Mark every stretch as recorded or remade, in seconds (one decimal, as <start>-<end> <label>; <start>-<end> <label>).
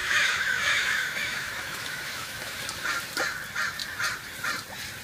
0.0-2.6 remade; 2.6-5.0 recorded